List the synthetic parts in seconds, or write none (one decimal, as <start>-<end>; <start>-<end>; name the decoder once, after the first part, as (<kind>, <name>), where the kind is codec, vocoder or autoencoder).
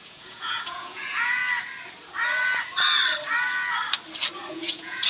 0.0-1.4 (vocoder, Vocos); 4.5-5.1